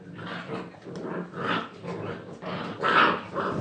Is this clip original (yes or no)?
no